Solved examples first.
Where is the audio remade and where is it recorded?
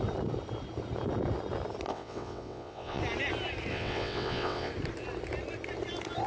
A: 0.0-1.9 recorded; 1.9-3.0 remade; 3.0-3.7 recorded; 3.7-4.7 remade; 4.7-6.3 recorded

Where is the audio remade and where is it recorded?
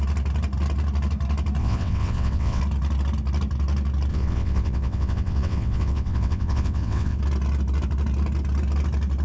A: 0.0-1.6 recorded; 1.6-2.6 remade; 2.6-4.1 recorded; 4.1-7.2 remade; 7.2-9.2 recorded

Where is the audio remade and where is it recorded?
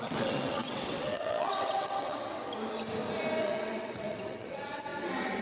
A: 0.0-2.4 remade; 2.4-3.4 recorded; 3.4-5.4 remade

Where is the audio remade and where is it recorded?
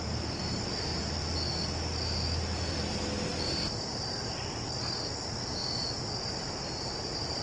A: 0.0-7.4 recorded